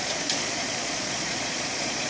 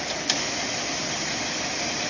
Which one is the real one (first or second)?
second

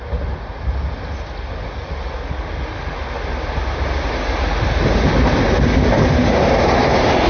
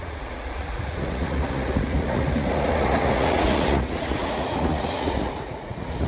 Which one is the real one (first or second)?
first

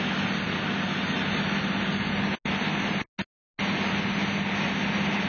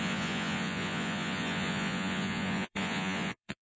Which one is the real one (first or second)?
first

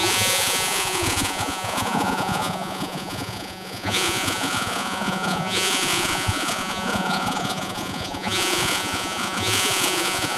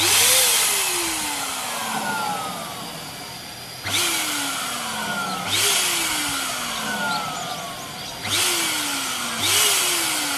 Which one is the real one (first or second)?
second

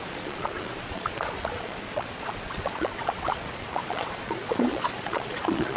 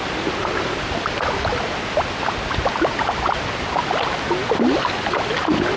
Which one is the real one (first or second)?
second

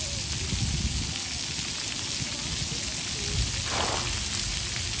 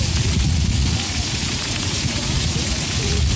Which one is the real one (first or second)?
first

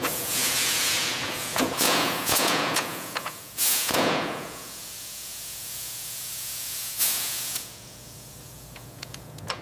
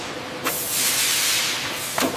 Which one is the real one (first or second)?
second